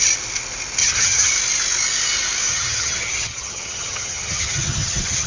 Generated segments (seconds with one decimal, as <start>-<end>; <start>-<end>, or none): 0.8-1.3; 2.5-5.3